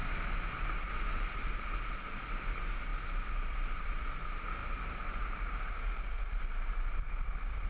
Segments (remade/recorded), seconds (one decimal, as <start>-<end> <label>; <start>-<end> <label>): 0.0-0.8 recorded; 0.8-7.7 remade